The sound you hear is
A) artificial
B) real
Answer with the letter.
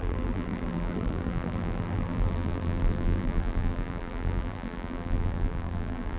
A